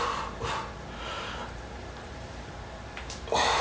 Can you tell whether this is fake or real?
fake